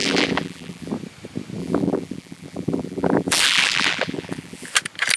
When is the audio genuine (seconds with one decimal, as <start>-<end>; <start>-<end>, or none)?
0.9-1.6; 4.7-5.2